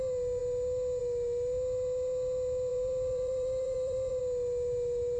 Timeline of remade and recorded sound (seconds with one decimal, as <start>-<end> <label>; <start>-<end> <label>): 0.0-2.7 recorded; 2.7-4.2 remade; 4.2-5.2 recorded